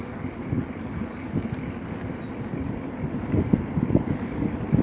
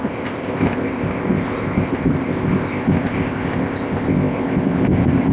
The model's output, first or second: second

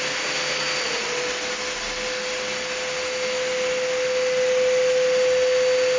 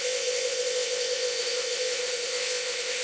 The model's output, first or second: second